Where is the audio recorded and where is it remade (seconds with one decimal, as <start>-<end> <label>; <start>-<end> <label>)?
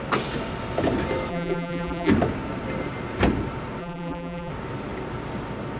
0.0-1.3 recorded; 1.3-2.1 remade; 2.1-3.8 recorded; 3.8-4.5 remade; 4.5-5.8 recorded